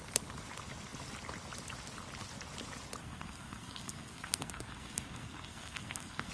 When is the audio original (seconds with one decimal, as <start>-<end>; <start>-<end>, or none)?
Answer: 0.0-3.0